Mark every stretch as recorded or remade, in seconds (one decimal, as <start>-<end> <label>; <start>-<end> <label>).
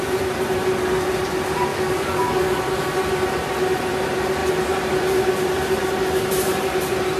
0.0-1.7 recorded; 1.7-2.6 remade; 2.6-7.2 recorded